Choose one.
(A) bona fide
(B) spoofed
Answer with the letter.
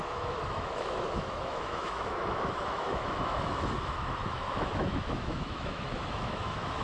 B